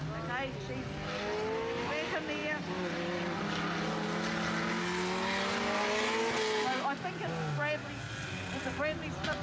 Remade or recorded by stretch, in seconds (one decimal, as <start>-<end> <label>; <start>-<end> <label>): 0.0-2.4 recorded; 2.4-3.4 remade; 3.4-9.4 recorded